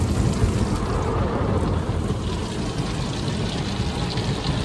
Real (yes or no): yes